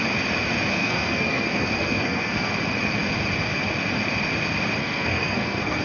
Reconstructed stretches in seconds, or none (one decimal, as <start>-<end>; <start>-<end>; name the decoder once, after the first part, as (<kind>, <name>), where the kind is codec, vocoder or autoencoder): 0.7-2.5 (codec, SNAC); 4.8-5.8